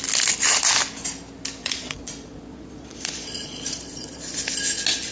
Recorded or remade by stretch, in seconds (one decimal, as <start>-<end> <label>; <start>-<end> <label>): 0.0-1.6 recorded; 1.6-4.4 remade; 4.4-5.1 recorded